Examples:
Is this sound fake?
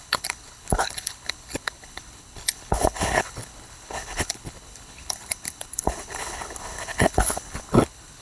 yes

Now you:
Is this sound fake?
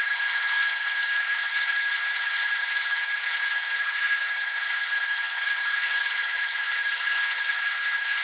yes